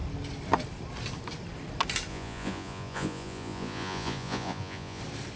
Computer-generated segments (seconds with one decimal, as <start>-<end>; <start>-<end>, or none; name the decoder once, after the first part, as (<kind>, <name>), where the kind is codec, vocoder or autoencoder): 2.1-5.0 (vocoder, Vocos)